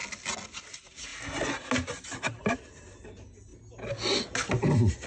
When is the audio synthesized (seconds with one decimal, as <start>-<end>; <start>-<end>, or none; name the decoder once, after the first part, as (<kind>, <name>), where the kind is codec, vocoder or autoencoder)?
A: none